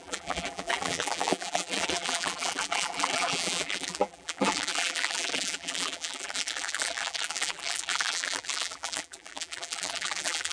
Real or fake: fake